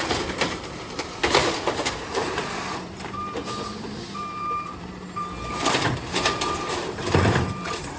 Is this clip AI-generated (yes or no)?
yes